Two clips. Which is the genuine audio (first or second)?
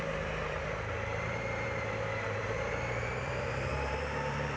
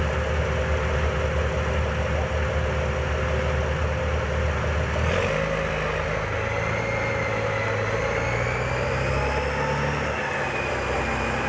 second